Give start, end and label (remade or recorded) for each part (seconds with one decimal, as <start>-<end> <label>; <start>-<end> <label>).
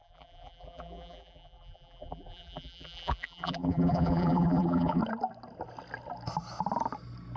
0.0-5.0 remade; 5.0-7.4 recorded